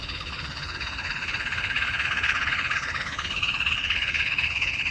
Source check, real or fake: fake